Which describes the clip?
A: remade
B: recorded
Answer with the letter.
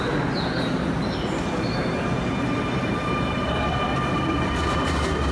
B